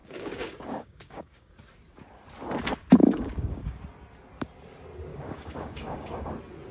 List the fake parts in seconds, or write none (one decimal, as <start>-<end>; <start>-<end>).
0.0-1.5; 3.0-3.8; 5.1-6.3